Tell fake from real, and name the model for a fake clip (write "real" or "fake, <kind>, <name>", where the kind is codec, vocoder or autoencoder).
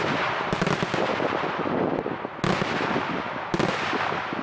real